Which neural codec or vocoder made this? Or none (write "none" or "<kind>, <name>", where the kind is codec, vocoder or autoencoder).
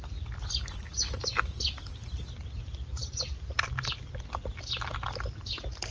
none